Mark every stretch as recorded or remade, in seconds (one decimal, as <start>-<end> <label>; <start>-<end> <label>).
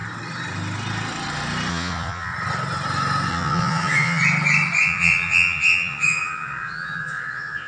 0.0-1.7 recorded; 1.7-2.3 remade; 2.3-3.3 recorded; 3.3-4.2 remade; 4.2-4.8 recorded; 4.8-7.7 remade